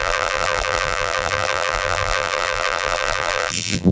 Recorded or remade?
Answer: remade